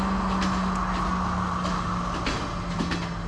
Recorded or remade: recorded